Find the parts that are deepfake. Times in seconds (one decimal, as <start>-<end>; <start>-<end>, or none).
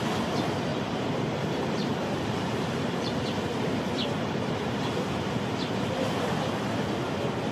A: 0.7-5.2